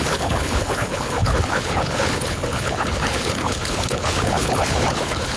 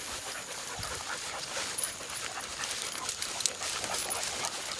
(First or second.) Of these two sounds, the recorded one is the second